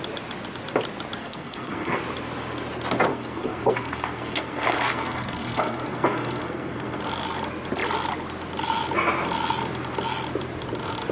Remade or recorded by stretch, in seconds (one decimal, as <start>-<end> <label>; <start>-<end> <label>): 0.0-1.2 recorded; 1.2-2.0 remade; 2.0-3.1 recorded; 3.1-7.0 remade; 7.0-11.1 recorded